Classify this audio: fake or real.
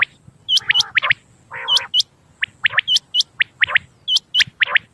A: real